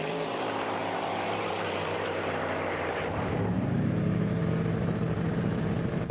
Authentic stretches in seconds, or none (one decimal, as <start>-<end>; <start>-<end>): none